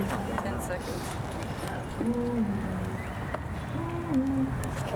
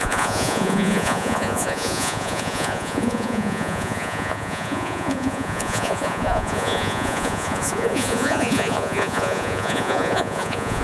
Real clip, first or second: first